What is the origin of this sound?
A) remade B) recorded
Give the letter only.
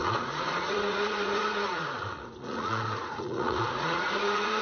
A